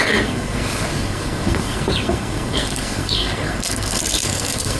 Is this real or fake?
fake